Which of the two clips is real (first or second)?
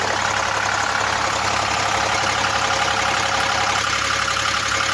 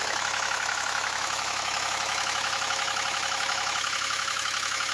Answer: first